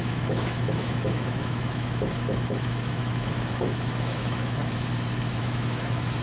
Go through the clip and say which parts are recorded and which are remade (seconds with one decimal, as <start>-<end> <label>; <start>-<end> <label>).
0.0-4.6 remade; 4.6-5.4 recorded; 5.4-6.2 remade